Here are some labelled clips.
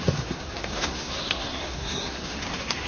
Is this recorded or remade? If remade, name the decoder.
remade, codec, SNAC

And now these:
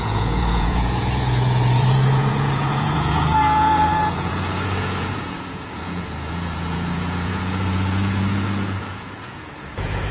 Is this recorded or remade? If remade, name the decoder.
remade, vocoder, Vocos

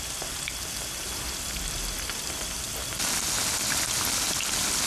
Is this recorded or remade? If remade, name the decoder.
recorded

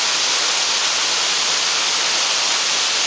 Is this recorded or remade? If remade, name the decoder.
recorded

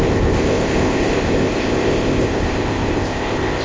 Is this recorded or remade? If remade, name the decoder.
remade, codec, ZipCodec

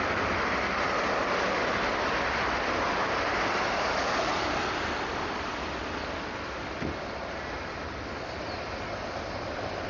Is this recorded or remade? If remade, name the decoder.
recorded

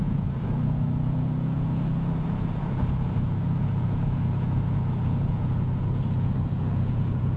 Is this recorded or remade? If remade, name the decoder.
remade, vocoder, Vocos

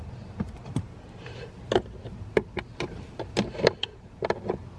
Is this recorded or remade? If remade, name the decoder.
recorded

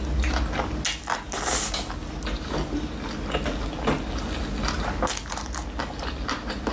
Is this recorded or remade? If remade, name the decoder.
recorded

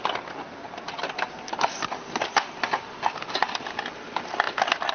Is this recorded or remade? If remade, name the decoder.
recorded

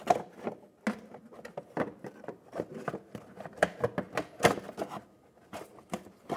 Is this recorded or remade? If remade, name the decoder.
recorded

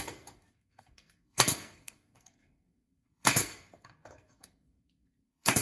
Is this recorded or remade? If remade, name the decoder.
remade, codec, SNAC